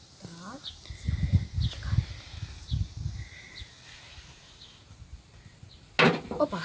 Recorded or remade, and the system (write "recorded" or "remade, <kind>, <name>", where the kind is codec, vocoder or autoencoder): recorded